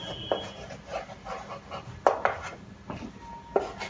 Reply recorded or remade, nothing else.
recorded